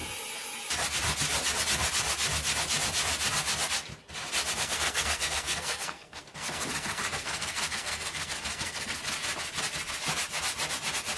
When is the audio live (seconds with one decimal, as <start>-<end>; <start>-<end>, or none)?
0.0-4.6; 9.0-11.2